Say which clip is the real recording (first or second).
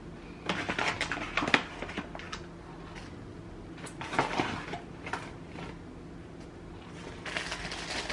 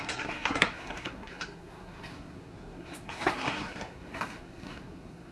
first